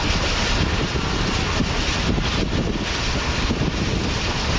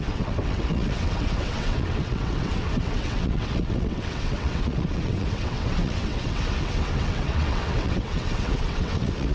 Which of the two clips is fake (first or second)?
second